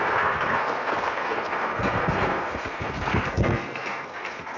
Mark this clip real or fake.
fake